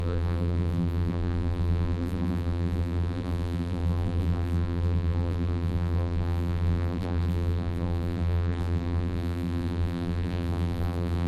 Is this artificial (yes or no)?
yes